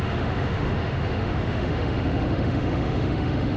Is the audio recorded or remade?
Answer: remade